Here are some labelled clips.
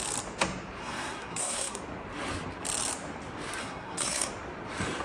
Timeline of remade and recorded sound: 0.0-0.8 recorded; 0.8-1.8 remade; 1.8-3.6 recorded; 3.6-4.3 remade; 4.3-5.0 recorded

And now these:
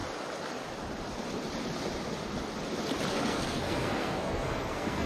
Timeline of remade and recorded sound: 0.0-3.1 recorded; 3.1-5.1 remade

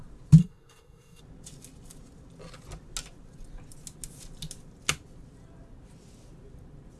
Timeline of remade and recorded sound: 0.0-0.4 recorded; 0.4-1.2 remade; 1.2-7.0 recorded

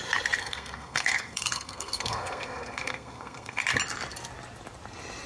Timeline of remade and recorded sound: 0.0-0.4 recorded; 0.4-3.6 remade; 3.6-5.3 recorded